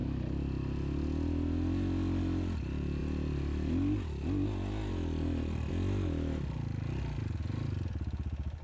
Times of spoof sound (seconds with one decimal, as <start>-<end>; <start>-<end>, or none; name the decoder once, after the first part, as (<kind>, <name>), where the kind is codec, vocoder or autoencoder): none